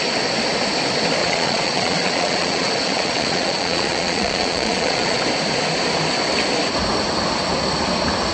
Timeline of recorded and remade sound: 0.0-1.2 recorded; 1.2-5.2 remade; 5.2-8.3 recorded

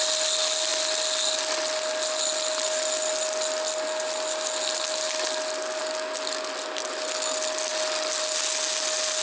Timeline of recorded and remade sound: 0.0-9.2 recorded

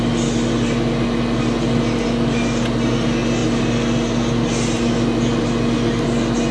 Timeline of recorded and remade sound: 0.0-6.5 recorded

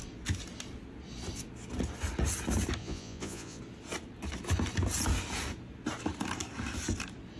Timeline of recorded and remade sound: 0.0-2.8 recorded; 2.8-3.6 remade; 3.6-7.4 recorded